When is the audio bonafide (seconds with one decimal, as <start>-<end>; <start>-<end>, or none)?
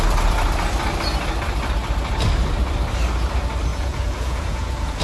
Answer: 0.0-3.7